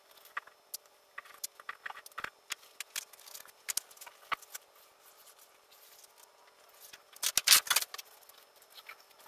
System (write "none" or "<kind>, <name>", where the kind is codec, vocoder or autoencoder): none